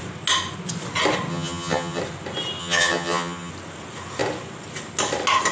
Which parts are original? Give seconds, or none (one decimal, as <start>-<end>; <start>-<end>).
0.0-1.3; 2.0-2.6; 3.5-5.5